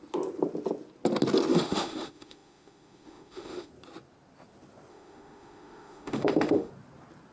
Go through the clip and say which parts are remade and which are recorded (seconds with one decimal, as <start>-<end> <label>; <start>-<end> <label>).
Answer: 0.0-1.5 recorded; 1.5-3.7 remade; 3.7-4.9 recorded; 4.9-6.7 remade; 6.7-7.3 recorded